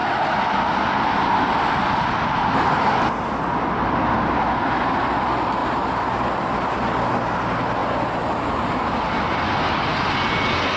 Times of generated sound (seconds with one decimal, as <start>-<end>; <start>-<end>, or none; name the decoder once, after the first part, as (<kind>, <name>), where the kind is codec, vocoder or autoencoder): none